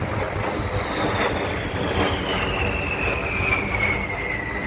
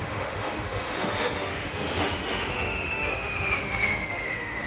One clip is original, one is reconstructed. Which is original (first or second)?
first